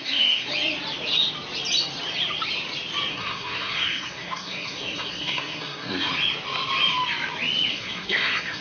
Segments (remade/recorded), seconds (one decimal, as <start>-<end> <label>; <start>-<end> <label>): 0.0-0.5 remade; 0.5-3.1 recorded; 3.1-6.1 remade; 6.1-7.7 recorded; 7.7-8.6 remade